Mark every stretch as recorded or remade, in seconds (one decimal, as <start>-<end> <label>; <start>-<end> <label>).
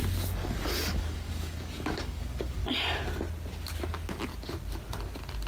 0.0-2.6 remade; 2.6-3.8 recorded; 3.8-4.3 remade; 4.3-5.5 recorded